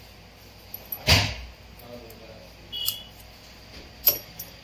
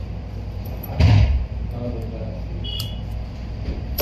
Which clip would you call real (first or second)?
first